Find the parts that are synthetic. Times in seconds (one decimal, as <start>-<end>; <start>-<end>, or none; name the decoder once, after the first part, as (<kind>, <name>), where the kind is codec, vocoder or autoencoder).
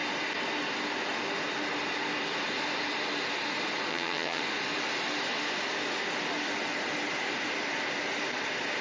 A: 3.9-4.4 (vocoder, HiFi-GAN)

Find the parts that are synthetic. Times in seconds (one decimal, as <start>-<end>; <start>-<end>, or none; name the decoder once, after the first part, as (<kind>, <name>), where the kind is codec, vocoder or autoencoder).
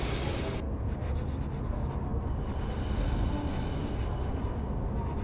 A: none